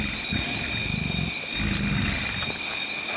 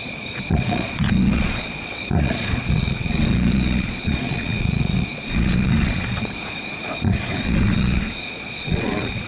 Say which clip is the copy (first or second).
second